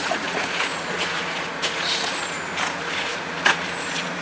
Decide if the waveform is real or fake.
fake